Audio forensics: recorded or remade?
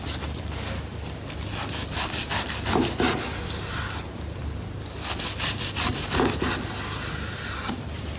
recorded